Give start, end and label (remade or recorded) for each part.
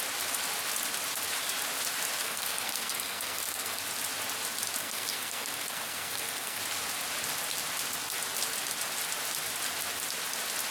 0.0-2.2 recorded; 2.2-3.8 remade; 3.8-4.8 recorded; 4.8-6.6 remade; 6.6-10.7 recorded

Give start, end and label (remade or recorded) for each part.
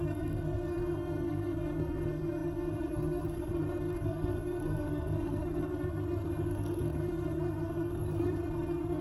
0.0-9.0 remade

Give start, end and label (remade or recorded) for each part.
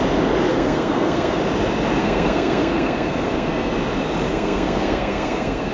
0.0-0.5 recorded; 0.5-1.4 remade; 1.4-2.0 recorded; 2.0-3.7 remade; 3.7-4.3 recorded; 4.3-5.7 remade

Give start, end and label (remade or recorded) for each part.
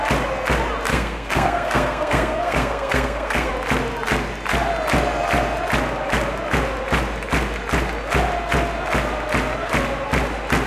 0.0-0.9 recorded; 0.9-3.5 remade; 3.5-10.7 recorded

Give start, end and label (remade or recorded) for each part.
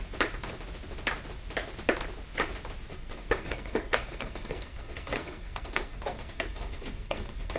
0.0-2.9 recorded; 2.9-7.6 remade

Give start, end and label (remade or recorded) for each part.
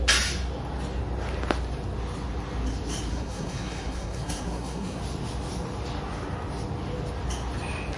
0.0-3.1 recorded; 3.1-5.0 remade; 5.0-8.0 recorded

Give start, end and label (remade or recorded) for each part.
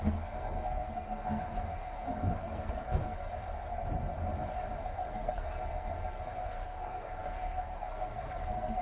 0.0-3.3 remade; 3.3-4.8 recorded; 4.8-8.8 remade